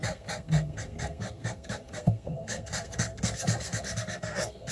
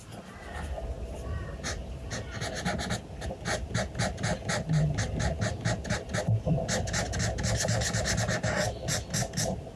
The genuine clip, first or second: second